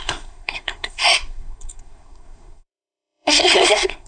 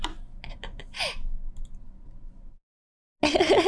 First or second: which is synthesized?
first